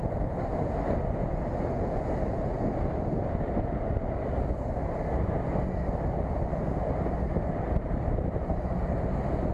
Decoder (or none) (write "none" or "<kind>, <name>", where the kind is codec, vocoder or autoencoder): none